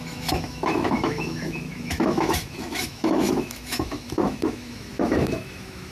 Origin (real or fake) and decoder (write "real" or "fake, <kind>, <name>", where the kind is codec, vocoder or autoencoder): fake, autoencoder, DAC-VAE